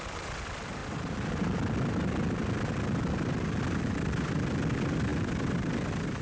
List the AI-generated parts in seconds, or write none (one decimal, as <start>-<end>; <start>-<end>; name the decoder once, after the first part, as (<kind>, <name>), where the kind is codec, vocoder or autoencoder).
none